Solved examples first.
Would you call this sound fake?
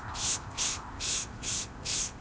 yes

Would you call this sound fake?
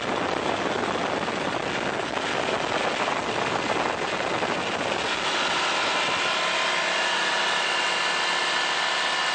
no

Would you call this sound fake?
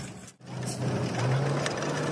no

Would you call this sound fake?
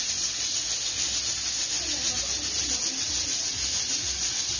no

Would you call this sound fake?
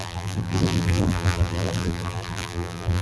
yes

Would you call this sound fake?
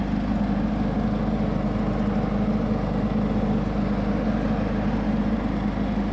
no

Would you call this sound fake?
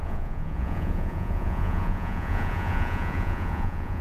yes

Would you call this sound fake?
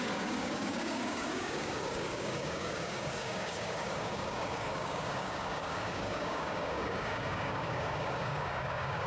yes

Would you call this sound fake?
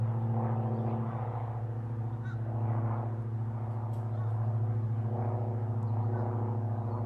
no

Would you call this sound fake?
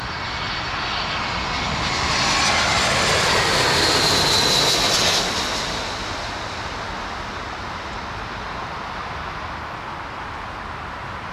no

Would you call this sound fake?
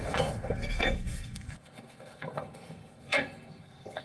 yes